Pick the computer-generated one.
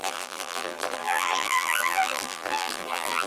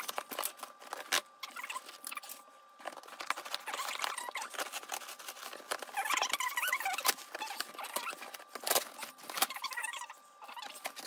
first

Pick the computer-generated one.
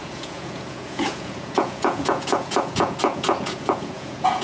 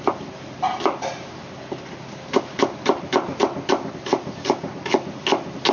first